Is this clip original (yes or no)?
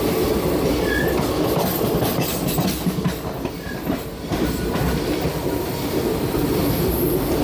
yes